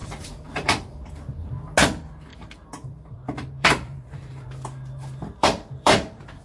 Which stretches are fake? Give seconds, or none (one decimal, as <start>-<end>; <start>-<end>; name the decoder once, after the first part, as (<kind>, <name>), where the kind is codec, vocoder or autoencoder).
0.0-1.5 (vocoder, BigVGAN v2); 2.3-6.4